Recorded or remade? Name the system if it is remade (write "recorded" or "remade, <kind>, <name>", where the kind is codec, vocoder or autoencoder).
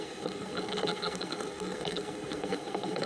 remade, codec, SNAC